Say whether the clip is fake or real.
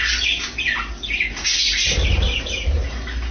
real